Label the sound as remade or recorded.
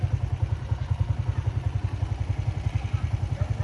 recorded